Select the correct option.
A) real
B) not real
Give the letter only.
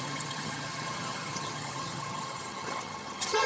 B